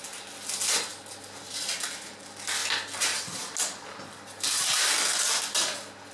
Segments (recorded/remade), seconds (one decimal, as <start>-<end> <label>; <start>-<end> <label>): 0.0-6.1 recorded